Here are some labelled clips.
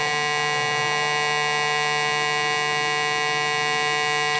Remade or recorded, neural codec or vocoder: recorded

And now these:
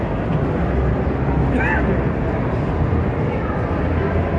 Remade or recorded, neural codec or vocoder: recorded